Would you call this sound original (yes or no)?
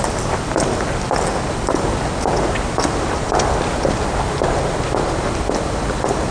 yes